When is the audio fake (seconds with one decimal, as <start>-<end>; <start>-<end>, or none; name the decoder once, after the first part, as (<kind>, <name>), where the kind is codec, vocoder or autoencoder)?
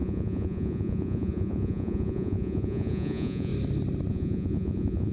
0.0-3.5 (vocoder, Vocos); 4.1-5.1